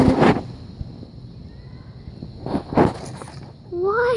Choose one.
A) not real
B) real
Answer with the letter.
B